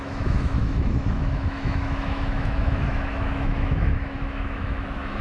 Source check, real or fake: fake